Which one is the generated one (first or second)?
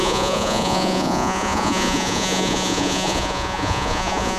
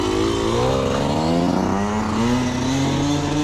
first